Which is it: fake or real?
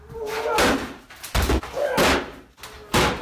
real